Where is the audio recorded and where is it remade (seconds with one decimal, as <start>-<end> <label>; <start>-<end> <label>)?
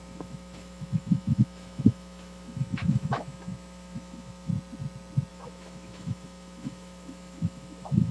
0.0-4.5 remade; 4.5-5.3 recorded; 5.3-8.1 remade